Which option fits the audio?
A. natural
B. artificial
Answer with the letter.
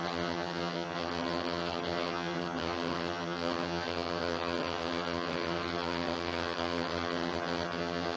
B